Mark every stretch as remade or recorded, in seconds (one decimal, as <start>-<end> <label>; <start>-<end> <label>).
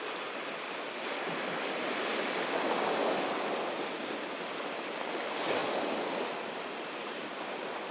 0.0-7.9 recorded